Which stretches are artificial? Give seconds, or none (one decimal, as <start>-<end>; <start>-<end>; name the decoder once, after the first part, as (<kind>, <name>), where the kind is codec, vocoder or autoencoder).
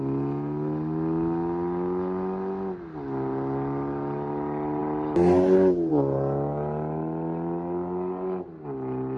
none